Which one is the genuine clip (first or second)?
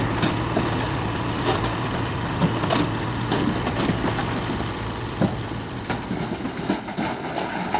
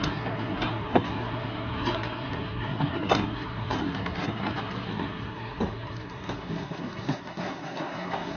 first